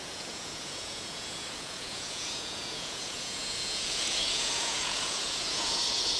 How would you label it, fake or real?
fake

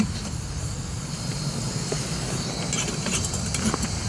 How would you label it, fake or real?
real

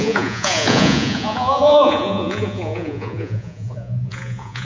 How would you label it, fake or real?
fake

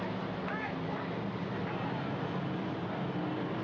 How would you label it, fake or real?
real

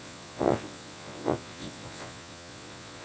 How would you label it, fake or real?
fake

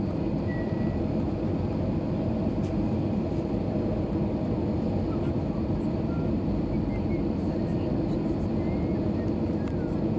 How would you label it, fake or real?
real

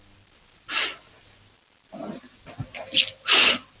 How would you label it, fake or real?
real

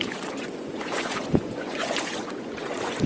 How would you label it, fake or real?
fake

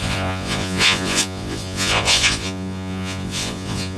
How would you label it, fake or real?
fake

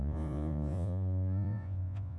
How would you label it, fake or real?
fake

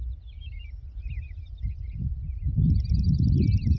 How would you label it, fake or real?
real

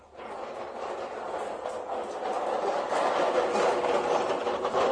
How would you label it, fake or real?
real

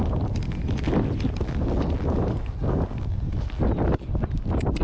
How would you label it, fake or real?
real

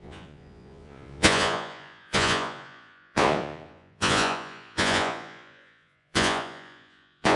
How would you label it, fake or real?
fake